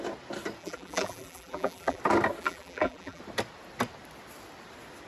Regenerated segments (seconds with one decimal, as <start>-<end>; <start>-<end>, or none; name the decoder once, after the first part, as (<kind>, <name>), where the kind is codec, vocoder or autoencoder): 0.6-2.0 (vocoder, BigVGAN v2); 2.4-3.2